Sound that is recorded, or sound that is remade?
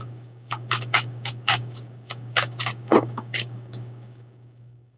remade